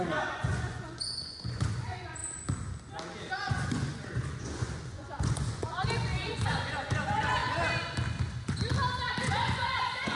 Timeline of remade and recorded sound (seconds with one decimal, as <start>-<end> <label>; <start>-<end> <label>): 0.0-2.2 remade; 2.2-3.3 recorded; 3.3-7.4 remade; 7.4-8.2 recorded; 8.2-8.7 remade; 8.7-9.2 recorded; 9.2-10.2 remade